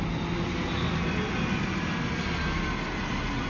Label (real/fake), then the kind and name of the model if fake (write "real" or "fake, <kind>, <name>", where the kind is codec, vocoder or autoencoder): real